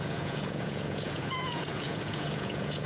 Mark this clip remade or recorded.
remade